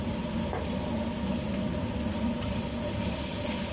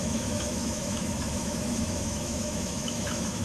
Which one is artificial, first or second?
second